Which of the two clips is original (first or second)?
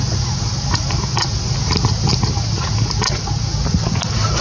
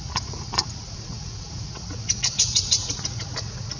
first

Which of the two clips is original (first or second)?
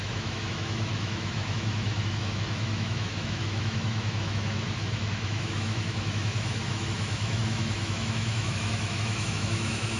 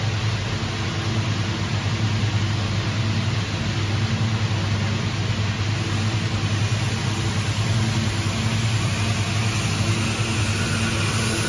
second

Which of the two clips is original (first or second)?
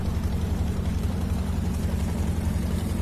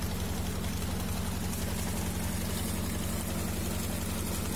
second